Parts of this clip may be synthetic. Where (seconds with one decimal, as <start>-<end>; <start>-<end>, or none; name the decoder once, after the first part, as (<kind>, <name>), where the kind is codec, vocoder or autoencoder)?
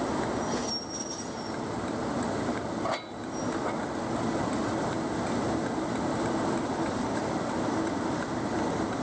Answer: 0.0-0.6 (vocoder, BigVGAN v2); 5.7-9.0